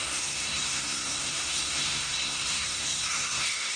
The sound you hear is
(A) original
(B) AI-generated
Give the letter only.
B